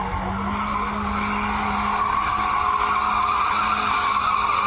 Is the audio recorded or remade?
recorded